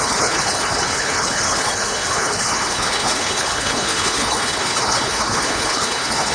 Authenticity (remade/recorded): remade